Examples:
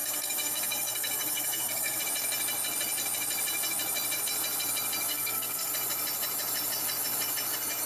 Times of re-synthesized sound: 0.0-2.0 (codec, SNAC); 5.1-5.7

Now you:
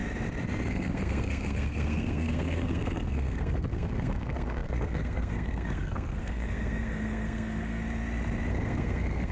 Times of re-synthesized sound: 0.7-7.8 (codec, SNAC); 8.5-9.3

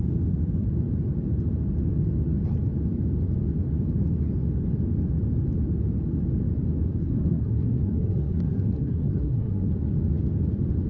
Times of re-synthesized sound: 7.0-9.7 (codec, SNAC)